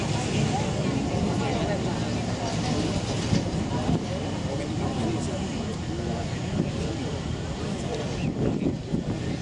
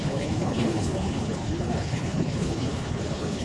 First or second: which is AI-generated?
second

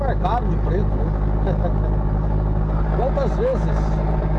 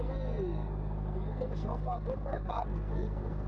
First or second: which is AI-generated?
second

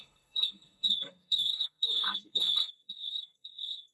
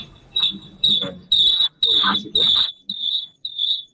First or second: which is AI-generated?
first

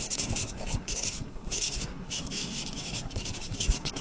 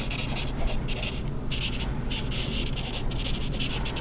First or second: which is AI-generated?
first